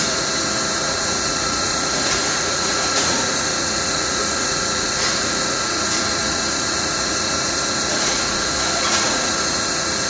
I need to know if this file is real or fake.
fake